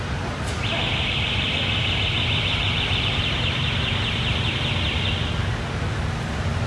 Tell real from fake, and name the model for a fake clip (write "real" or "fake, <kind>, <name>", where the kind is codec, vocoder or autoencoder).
real